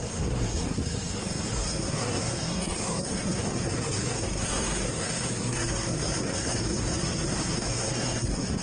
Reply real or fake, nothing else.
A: fake